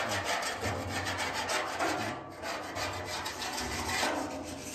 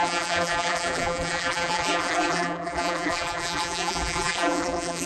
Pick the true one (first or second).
first